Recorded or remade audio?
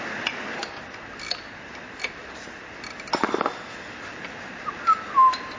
recorded